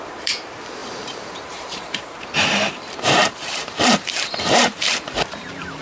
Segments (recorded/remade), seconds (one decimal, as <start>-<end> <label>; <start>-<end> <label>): 0.0-5.8 remade